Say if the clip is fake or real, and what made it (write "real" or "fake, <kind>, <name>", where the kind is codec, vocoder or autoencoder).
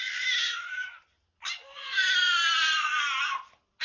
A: real